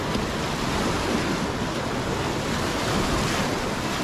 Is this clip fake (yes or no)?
no